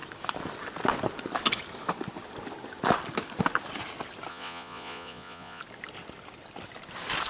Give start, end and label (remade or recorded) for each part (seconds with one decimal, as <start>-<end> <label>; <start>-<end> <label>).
0.0-4.3 recorded; 4.3-5.6 remade; 5.6-7.3 recorded